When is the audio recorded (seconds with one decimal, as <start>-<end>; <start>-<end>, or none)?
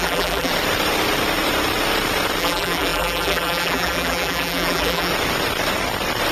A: 0.5-2.4; 5.1-6.3